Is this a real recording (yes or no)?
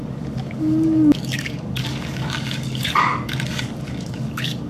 no